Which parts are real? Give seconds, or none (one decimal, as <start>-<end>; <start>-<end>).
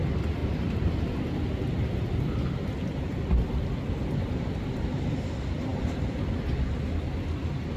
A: 0.0-7.8